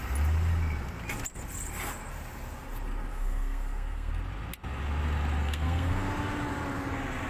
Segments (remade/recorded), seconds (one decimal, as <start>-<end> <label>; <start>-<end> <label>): 0.0-3.1 recorded; 3.1-4.1 remade; 4.1-5.4 recorded; 5.4-6.1 remade; 6.1-7.3 recorded